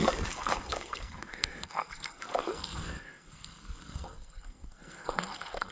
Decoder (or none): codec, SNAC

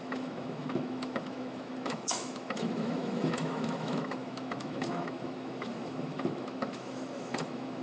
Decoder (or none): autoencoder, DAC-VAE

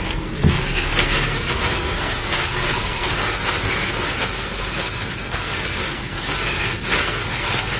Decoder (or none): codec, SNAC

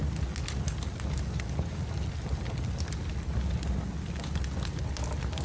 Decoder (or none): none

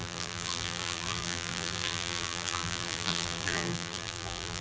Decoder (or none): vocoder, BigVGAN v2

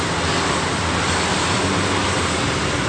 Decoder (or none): none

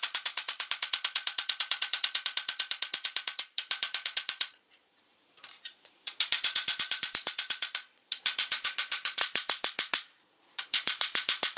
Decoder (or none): vocoder, Vocos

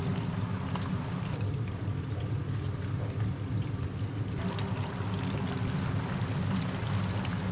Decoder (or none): none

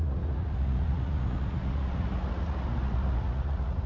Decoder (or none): vocoder, Vocos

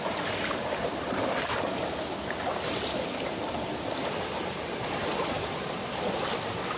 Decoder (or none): none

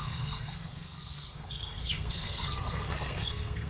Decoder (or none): codec, SNAC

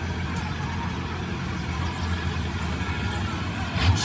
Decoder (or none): none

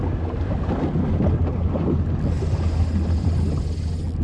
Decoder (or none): none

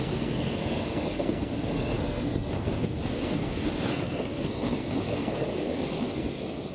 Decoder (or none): codec, SNAC